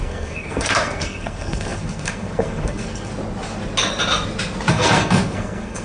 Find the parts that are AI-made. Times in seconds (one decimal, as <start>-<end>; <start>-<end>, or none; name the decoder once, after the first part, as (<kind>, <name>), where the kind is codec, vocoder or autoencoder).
0.0-3.1 (codec, SNAC); 4.7-5.8